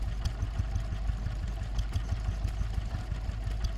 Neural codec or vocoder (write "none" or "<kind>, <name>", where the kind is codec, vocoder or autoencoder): none